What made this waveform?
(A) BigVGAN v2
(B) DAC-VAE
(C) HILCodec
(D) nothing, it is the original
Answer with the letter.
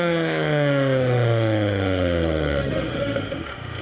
B